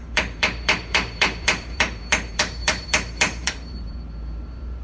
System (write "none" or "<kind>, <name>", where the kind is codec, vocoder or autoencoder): vocoder, BigVGAN v2